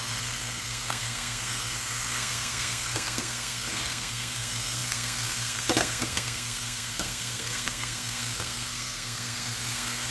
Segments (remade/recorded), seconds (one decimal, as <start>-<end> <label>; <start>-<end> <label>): 0.0-10.1 remade